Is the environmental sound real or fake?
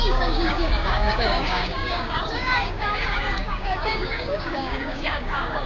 fake